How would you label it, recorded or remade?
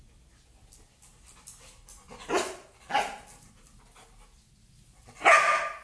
recorded